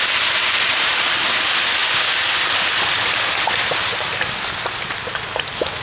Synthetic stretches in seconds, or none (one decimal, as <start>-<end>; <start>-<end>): none

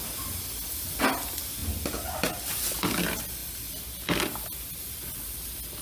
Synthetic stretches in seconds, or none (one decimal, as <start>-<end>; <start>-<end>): none

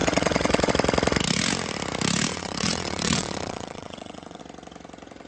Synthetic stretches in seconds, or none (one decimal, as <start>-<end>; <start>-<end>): 0.0-0.7; 2.3-4.4